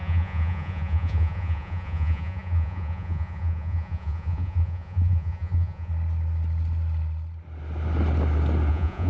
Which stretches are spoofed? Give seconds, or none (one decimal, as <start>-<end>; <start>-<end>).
0.0-5.9; 8.7-9.1